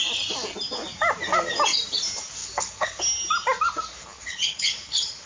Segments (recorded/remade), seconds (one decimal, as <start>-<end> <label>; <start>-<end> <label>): 0.0-2.4 recorded; 2.4-3.0 remade; 3.0-3.9 recorded; 3.9-5.3 remade